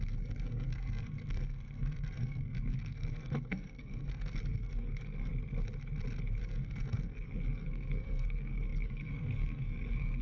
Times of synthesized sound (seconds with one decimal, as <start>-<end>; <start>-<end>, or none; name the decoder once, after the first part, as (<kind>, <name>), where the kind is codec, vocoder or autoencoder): 0.0-5.3 (codec, SNAC); 6.4-10.2